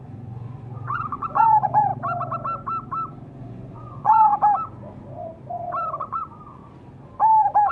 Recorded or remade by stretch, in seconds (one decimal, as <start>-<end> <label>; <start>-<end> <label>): 0.0-1.9 remade; 1.9-3.4 recorded; 3.4-4.3 remade; 4.3-6.0 recorded; 6.0-6.6 remade; 6.6-7.7 recorded